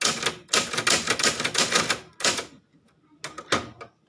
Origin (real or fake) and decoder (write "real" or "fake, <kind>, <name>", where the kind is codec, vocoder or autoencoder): real